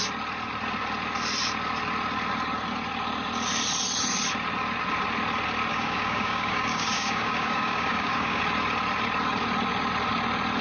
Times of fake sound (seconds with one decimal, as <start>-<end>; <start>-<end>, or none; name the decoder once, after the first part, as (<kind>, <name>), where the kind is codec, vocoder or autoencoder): 5.7-8.4 (codec, DAC)